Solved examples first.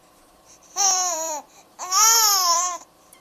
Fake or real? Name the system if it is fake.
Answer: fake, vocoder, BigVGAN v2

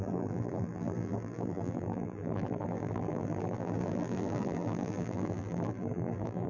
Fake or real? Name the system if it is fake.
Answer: fake, vocoder, BigVGAN v2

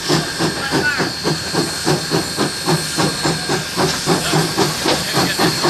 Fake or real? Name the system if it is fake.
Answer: real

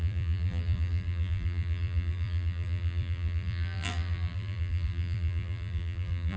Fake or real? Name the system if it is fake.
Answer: fake, vocoder, BigVGAN v2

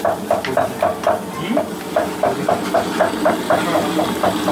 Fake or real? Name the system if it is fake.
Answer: real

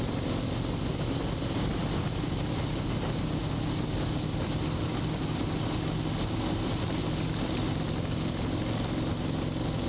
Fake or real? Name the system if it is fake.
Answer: real